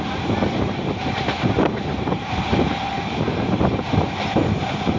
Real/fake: fake